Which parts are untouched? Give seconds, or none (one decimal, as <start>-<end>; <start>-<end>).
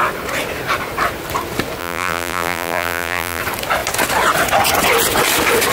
0.0-1.8; 3.4-5.7